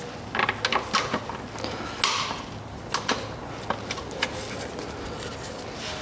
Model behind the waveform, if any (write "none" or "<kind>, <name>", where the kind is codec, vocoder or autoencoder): none